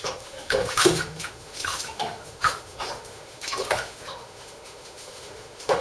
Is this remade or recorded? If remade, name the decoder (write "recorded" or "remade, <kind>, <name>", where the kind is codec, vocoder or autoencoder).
remade, autoencoder, DAC-VAE